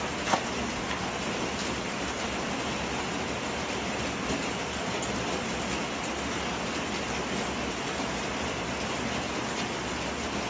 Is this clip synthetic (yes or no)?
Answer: no